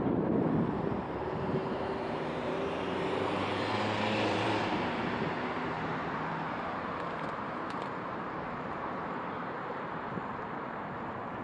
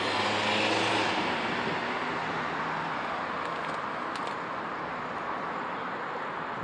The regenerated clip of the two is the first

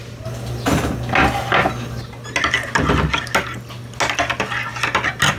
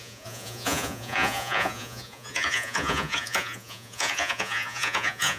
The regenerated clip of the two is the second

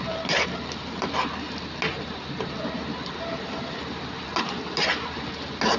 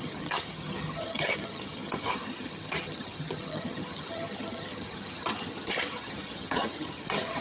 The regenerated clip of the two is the second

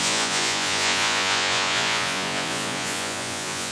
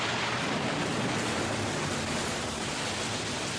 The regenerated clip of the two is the first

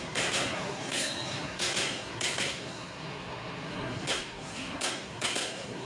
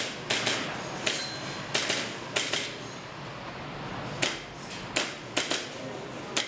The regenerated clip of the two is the first